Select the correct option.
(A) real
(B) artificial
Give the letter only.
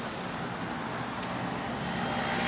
A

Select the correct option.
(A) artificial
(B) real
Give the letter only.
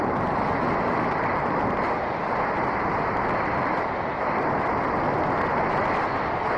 B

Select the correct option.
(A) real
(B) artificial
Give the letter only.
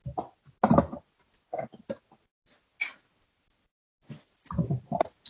A